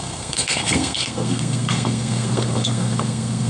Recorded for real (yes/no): no